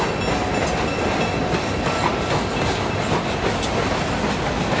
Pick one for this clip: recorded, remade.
recorded